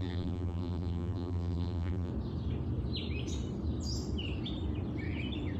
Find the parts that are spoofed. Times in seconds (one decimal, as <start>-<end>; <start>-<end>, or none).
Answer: 0.0-2.1